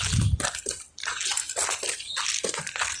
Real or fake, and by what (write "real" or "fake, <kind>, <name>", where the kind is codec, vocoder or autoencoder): real